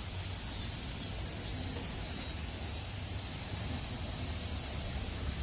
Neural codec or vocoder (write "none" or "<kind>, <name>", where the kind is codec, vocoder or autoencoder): none